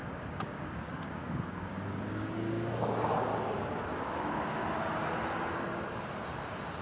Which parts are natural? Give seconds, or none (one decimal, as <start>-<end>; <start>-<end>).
3.3-3.9; 4.6-6.8